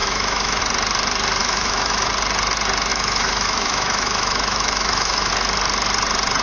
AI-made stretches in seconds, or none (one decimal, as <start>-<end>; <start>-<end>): 0.0-0.6; 1.4-2.1; 2.9-5.3